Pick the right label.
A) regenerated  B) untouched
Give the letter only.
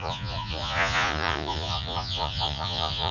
A